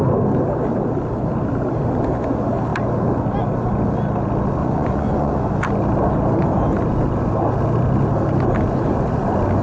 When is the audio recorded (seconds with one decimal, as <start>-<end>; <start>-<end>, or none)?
0.0-4.6; 5.4-9.6